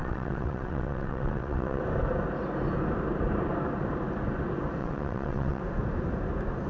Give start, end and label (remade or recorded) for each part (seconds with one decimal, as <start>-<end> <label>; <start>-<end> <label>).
0.0-1.8 remade; 1.8-4.8 recorded; 4.8-5.6 remade; 5.6-6.7 recorded